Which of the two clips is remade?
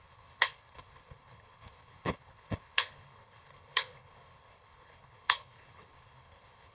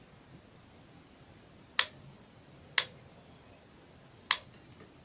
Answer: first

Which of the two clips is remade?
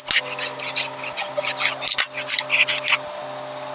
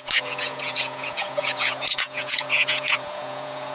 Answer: second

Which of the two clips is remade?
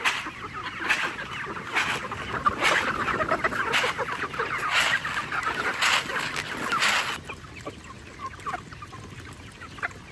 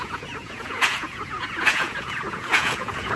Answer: second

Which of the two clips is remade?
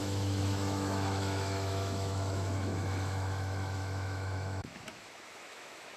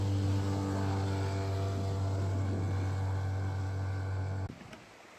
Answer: first